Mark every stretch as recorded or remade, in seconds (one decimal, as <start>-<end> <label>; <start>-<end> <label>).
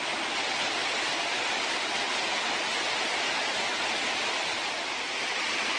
0.0-5.8 recorded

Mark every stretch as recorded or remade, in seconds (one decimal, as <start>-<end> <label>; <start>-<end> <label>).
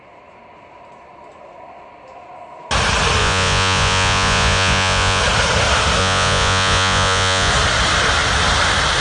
0.0-3.2 recorded; 3.2-5.2 remade; 5.2-6.0 recorded; 6.0-7.5 remade; 7.5-9.0 recorded